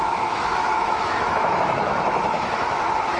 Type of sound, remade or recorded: remade